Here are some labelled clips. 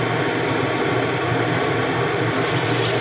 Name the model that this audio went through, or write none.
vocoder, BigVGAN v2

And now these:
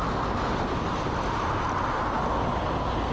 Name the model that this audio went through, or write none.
none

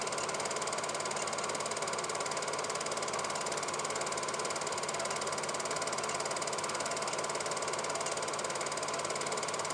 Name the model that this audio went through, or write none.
none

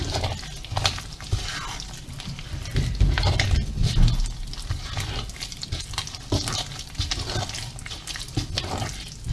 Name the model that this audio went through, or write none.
none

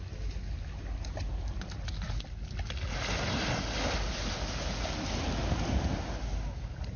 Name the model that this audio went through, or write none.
none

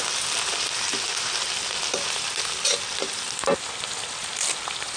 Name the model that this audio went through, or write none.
none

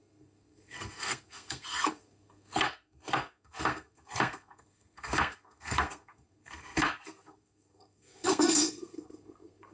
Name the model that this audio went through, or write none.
codec, SNAC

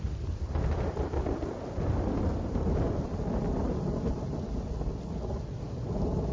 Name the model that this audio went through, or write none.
none